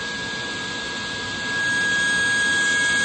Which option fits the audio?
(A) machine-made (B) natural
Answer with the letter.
B